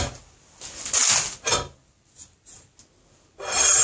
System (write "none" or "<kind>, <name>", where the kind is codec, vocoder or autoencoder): none